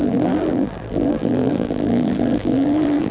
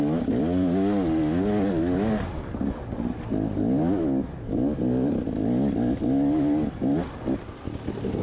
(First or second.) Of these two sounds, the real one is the second